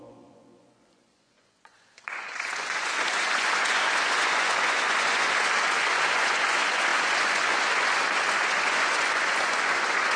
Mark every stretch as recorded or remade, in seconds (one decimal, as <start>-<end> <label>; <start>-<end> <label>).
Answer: 0.0-10.2 remade